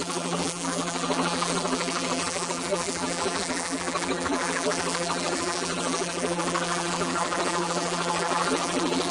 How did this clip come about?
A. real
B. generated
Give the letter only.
B